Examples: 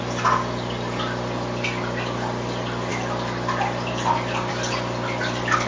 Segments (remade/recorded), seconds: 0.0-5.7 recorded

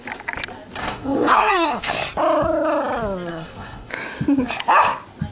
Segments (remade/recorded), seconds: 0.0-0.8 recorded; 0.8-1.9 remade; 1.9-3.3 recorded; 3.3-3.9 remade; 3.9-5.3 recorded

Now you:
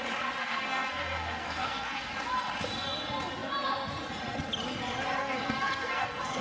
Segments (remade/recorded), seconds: 0.0-0.4 recorded; 0.4-2.1 remade; 2.1-5.2 recorded; 5.2-6.4 remade

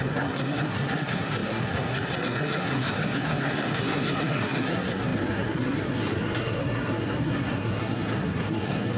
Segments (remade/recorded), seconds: 0.0-9.0 remade

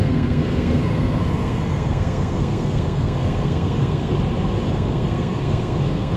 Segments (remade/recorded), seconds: 0.0-4.1 remade; 4.1-4.7 recorded; 4.7-6.2 remade

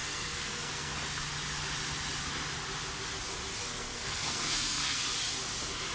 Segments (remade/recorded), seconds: 0.0-0.9 remade; 0.9-3.6 recorded; 3.6-5.0 remade; 5.0-5.9 recorded

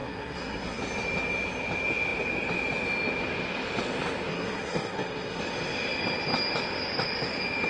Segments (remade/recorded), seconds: 0.0-0.8 remade; 0.8-4.3 recorded; 4.3-5.4 remade; 5.4-7.7 recorded

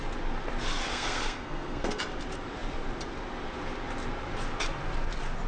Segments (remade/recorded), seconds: 0.0-0.9 recorded; 0.9-2.0 remade; 2.0-5.5 recorded